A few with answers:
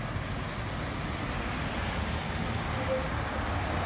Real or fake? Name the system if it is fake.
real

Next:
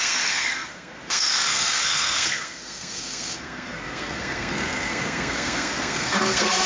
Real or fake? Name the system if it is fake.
fake, codec, SNAC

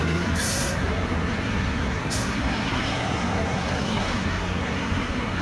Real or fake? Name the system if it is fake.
fake, codec, SNAC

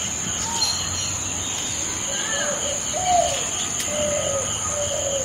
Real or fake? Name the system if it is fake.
real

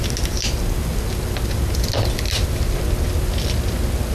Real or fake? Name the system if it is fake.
real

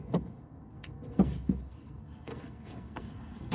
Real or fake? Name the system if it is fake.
fake, codec, SNAC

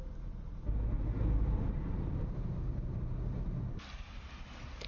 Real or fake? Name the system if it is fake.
real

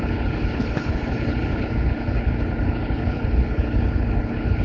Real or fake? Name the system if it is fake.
fake, codec, HILCodec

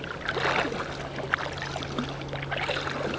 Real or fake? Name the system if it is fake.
real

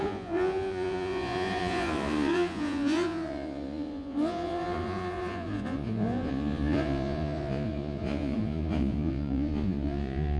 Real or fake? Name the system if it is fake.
fake, vocoder, Vocos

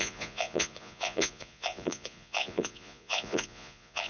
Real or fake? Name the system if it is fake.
fake, vocoder, Vocos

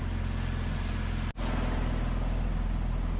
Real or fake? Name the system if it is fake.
real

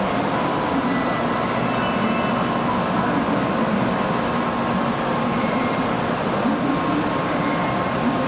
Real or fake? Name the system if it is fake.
real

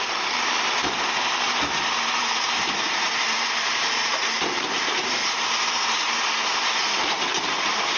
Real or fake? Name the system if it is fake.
fake, vocoder, BigVGAN v2